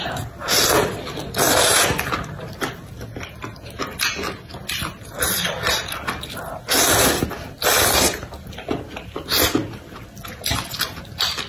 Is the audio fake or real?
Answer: real